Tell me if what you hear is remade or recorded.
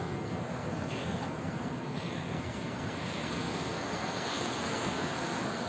remade